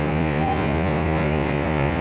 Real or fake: fake